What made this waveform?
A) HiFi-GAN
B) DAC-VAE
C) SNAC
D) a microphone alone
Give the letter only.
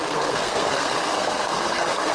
C